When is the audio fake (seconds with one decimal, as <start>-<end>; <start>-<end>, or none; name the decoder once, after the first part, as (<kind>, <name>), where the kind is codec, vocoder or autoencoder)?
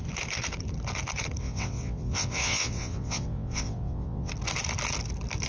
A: 1.4-4.3 (vocoder, WaveNeXt)